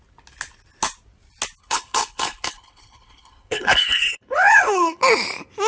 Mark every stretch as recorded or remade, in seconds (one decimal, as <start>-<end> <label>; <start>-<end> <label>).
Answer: 0.0-1.6 recorded; 1.6-5.0 remade; 5.0-5.7 recorded